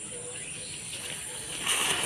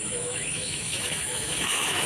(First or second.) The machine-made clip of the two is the second